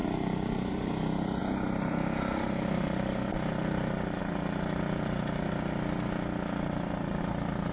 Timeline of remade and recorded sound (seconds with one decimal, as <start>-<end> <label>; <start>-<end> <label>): 0.0-0.9 remade; 0.9-7.7 recorded